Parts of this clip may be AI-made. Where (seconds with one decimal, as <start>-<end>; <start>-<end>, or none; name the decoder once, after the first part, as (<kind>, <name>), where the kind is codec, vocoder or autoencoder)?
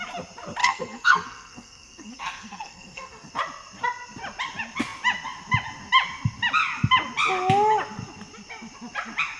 0.6-3.3 (codec, SNAC)